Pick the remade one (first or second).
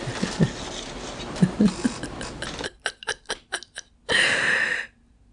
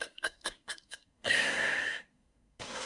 second